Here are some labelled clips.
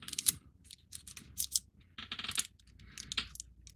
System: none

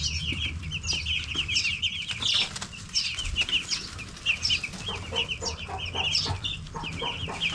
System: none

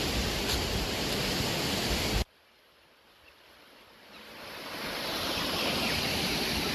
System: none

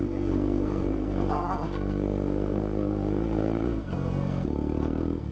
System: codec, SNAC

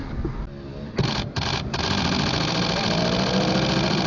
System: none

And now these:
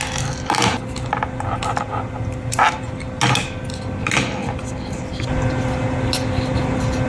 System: none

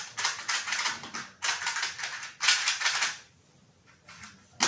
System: none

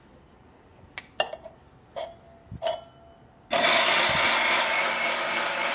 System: none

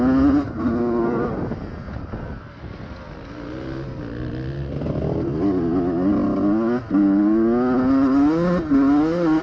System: none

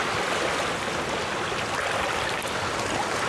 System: none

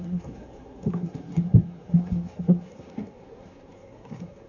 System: codec, SNAC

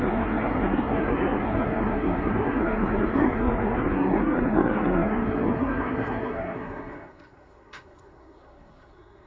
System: codec, SNAC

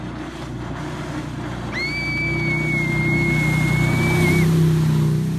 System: none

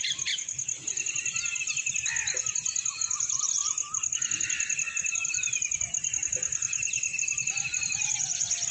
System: none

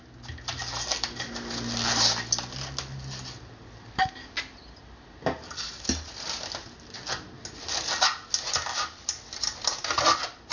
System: none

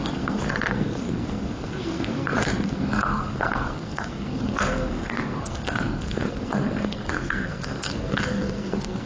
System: codec, SNAC